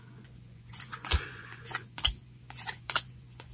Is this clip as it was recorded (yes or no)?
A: no